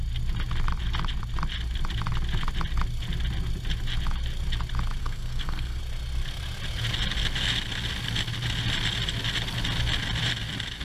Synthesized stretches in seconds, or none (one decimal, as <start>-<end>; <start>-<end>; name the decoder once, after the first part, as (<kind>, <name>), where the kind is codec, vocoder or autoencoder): 5.0-5.8 (codec, SNAC)